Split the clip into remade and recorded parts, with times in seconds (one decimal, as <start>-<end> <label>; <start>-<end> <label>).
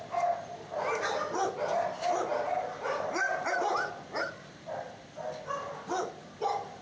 0.0-6.8 recorded